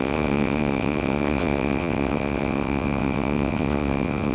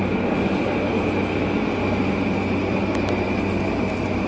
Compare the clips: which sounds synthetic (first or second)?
first